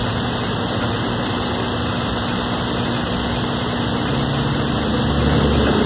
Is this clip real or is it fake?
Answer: real